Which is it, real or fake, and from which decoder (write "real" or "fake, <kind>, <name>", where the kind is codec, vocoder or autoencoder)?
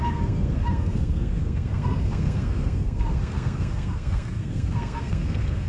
fake, codec, SNAC